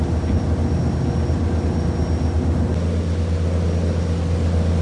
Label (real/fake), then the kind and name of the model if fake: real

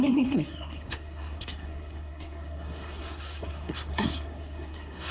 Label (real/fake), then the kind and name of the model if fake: fake, codec, SNAC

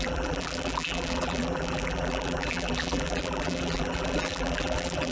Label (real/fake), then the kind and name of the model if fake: fake, vocoder, BigVGAN v2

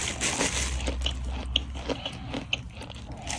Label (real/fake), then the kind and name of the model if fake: real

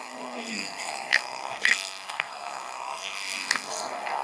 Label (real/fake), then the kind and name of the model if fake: fake, codec, SNAC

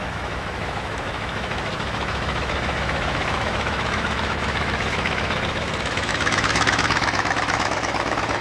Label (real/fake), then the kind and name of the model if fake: fake, autoencoder, DAC-VAE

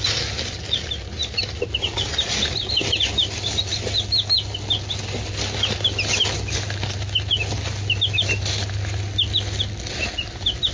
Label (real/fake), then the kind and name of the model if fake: real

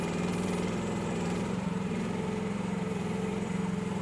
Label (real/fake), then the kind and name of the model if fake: fake, vocoder, BigVGAN v2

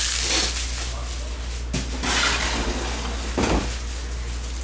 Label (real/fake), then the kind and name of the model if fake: real